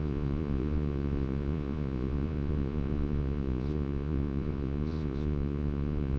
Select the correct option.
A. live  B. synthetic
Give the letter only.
B